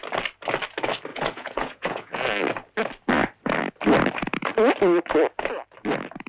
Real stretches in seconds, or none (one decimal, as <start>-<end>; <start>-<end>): 0.0-1.1; 2.1-6.3